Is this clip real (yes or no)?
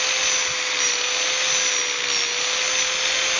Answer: yes